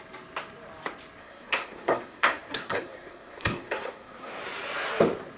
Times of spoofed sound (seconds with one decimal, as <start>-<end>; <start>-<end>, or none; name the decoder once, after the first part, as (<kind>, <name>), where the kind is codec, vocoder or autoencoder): 1.2-4.4 (codec, SNAC)